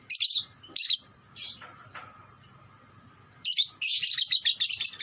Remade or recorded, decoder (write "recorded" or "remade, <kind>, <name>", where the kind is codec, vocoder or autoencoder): remade, vocoder, BigVGAN v2